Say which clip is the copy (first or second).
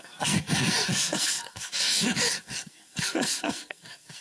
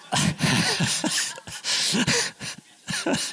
first